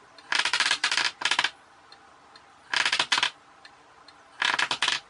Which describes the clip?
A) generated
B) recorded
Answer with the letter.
B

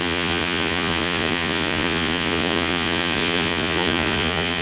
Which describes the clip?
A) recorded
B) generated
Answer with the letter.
B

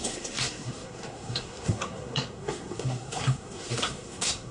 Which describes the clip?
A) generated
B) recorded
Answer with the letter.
A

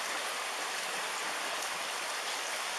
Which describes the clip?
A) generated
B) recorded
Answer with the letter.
B